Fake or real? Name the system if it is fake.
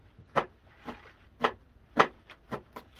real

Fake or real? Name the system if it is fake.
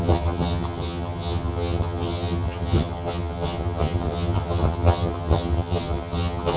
fake, vocoder, HiFi-GAN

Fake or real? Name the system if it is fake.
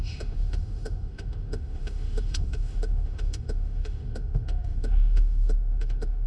fake, autoencoder, DAC-VAE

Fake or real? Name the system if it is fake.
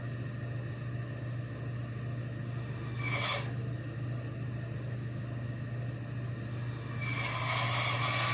real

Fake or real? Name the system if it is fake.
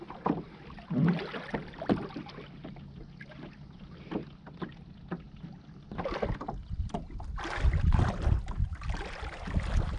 real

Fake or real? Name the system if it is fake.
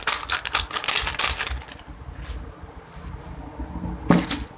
real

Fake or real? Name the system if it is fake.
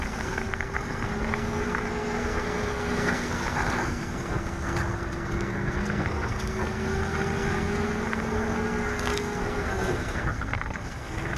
fake, codec, SNAC